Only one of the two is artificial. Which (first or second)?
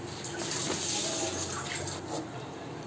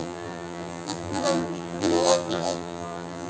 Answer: second